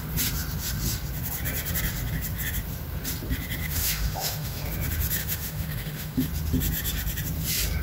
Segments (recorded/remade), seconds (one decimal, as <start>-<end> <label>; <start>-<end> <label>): 0.0-3.6 recorded; 3.6-4.7 remade; 4.7-5.2 recorded; 5.2-6.3 remade; 6.3-7.8 recorded